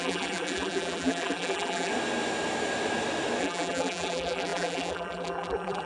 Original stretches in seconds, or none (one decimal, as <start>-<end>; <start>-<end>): 1.9-3.4